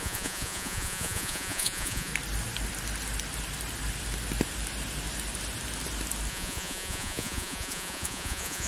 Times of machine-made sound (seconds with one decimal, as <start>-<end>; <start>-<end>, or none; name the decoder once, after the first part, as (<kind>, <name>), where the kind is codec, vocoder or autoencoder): 0.0-2.1 (vocoder, Vocos); 6.3-8.7